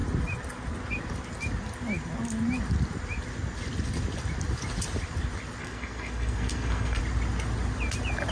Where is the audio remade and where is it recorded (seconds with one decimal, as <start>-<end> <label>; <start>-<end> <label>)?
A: 0.0-5.6 recorded; 5.6-7.0 remade; 7.0-8.3 recorded